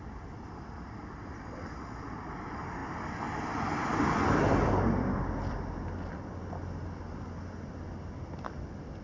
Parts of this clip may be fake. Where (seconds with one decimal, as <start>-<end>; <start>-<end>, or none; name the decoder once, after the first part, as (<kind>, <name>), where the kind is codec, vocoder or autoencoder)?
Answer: none